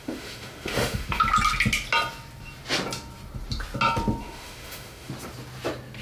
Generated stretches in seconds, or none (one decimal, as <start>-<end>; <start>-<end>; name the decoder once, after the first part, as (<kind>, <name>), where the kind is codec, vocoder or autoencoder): 0.0-1.2 (autoencoder, DAC-VAE); 4.2-5.1